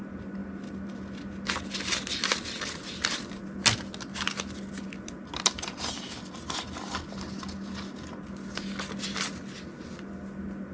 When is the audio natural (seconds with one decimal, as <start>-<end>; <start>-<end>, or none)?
0.0-10.7